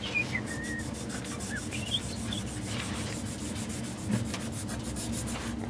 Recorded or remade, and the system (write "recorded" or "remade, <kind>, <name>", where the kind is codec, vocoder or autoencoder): recorded